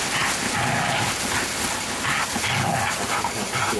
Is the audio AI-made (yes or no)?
no